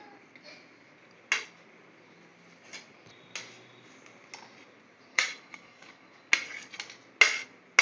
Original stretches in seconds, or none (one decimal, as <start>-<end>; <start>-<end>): 0.0-5.1; 6.3-7.8